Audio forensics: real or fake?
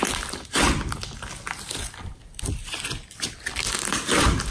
real